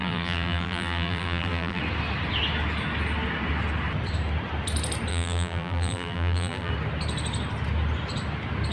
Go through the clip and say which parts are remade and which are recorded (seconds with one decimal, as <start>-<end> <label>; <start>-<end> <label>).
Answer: 0.0-1.8 remade; 1.8-5.1 recorded; 5.1-6.7 remade; 6.7-8.7 recorded